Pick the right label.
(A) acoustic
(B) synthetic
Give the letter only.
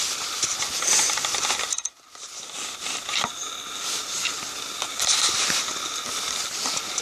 A